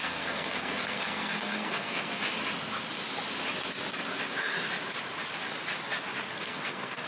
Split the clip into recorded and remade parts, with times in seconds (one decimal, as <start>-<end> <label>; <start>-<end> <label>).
0.0-2.2 remade; 2.2-6.3 recorded; 6.3-7.1 remade